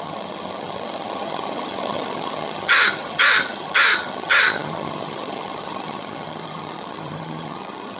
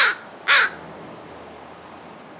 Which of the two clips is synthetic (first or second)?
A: first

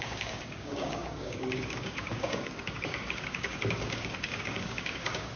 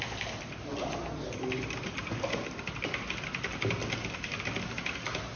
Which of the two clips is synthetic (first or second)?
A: first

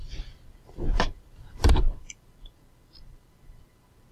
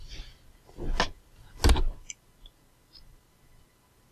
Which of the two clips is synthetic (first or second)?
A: first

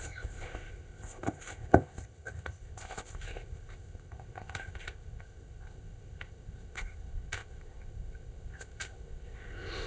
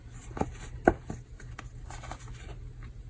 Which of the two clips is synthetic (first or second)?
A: first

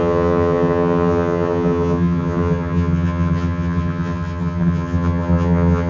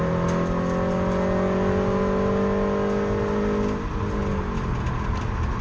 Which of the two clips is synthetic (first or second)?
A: first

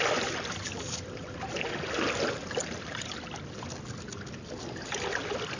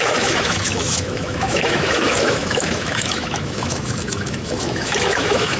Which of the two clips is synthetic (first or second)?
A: second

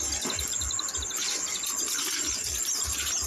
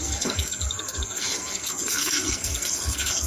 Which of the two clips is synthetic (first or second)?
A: second